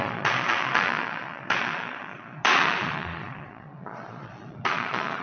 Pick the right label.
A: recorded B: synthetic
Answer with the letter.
B